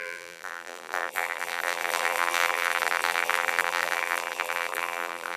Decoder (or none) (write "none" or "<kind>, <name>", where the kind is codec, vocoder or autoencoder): vocoder, BigVGAN v2